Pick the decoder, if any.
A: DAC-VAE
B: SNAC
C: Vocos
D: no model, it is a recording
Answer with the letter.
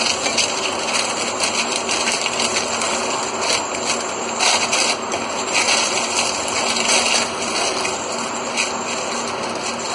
D